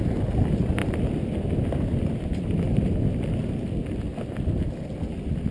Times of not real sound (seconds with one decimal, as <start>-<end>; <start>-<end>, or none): none